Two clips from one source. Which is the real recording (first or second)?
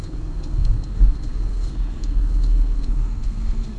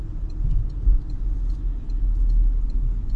second